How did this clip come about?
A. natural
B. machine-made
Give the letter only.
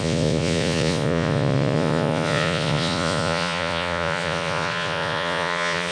B